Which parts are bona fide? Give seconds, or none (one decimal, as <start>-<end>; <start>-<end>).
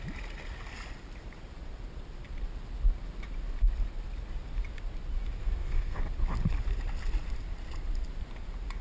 0.0-5.4; 6.0-8.8